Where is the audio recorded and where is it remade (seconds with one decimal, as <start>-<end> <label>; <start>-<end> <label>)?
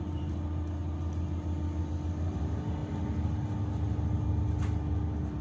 0.0-5.4 recorded